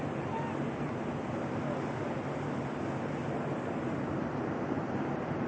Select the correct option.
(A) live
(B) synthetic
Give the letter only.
A